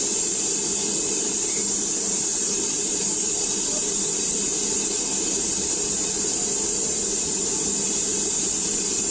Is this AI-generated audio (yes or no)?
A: no